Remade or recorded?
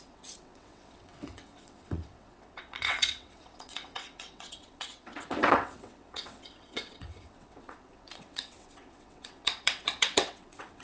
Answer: remade